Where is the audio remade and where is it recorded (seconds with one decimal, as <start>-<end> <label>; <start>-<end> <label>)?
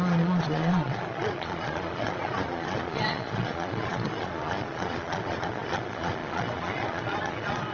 0.0-7.7 remade